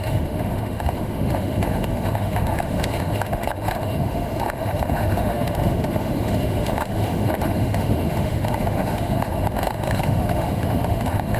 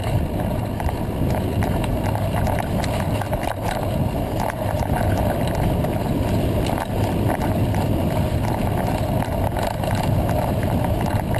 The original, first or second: second